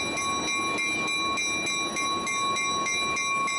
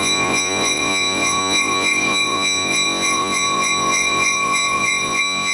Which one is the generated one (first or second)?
second